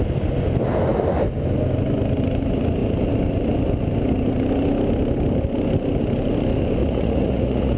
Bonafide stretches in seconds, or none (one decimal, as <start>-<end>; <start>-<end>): 0.0-6.8